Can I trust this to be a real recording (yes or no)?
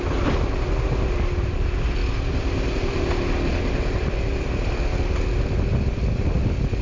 yes